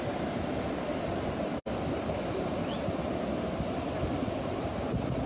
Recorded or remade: recorded